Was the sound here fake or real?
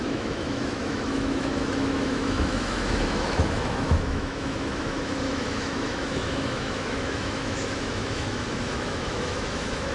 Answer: fake